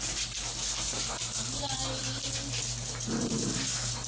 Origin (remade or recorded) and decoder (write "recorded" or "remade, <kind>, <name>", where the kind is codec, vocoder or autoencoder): recorded